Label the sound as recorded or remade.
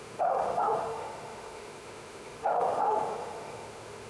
remade